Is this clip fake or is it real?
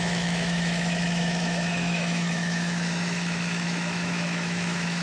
fake